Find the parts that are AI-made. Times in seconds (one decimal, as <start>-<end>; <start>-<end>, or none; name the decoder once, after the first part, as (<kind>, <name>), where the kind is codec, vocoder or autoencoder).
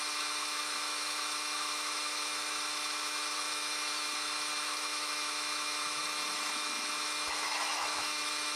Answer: 0.0-8.6 (autoencoder, DAC-VAE)